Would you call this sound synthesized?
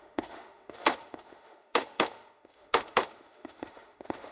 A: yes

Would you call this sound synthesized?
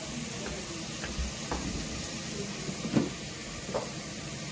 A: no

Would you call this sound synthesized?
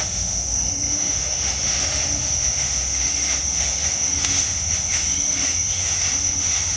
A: yes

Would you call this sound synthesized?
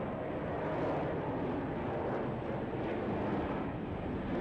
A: no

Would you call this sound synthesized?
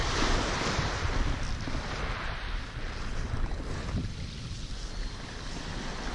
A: no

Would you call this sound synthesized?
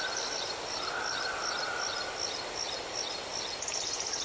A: no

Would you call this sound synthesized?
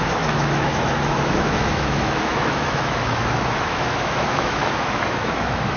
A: yes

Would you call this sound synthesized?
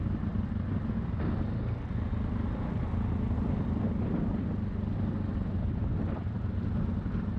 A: no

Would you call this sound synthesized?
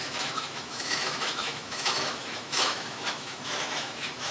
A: yes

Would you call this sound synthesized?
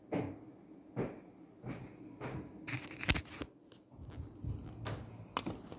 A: no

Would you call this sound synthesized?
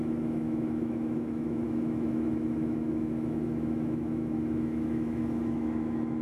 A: yes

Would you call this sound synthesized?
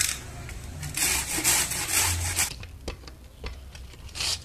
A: no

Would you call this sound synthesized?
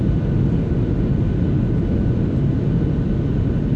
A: no